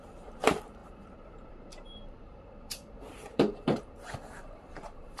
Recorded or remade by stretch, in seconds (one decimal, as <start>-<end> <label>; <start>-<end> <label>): 0.0-5.2 remade